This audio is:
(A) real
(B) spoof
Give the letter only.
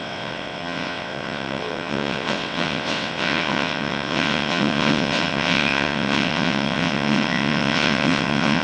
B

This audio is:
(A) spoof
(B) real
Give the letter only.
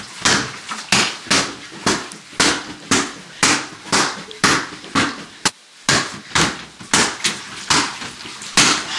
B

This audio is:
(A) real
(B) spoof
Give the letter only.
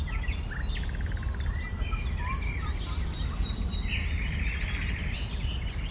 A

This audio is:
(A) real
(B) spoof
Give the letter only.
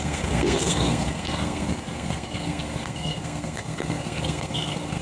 B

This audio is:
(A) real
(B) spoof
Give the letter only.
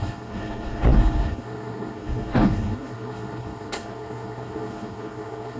B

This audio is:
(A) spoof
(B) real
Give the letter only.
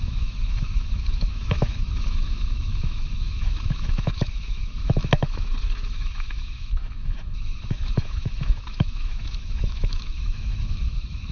A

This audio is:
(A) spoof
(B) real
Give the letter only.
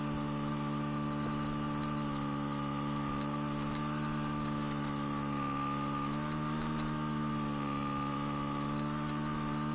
B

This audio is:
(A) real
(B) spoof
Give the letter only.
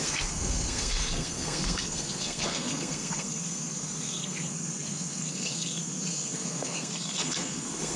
B